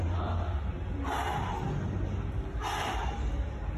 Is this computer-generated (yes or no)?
no